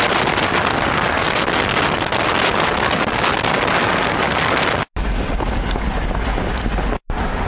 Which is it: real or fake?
real